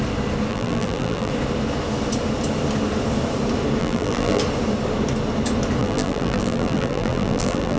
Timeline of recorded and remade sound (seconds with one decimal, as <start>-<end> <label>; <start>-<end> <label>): 0.0-0.5 recorded; 0.5-1.3 remade; 1.3-3.8 recorded; 3.8-4.4 remade; 4.4-5.8 recorded; 5.8-7.8 remade